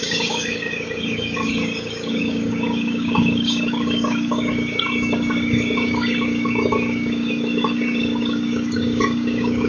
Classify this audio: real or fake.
fake